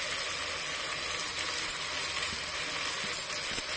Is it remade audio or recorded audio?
recorded